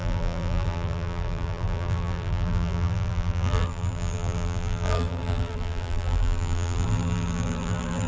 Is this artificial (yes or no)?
yes